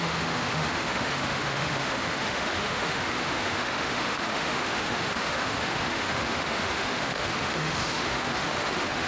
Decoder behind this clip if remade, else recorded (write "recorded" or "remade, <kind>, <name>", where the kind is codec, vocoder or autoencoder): remade, autoencoder, DAC-VAE